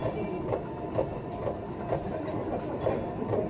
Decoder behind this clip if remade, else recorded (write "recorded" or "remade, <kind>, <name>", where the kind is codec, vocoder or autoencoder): recorded